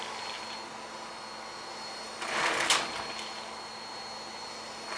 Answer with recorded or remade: recorded